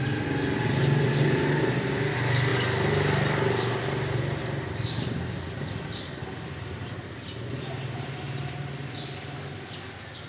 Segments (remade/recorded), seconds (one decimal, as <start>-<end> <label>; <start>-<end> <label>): 0.0-10.3 recorded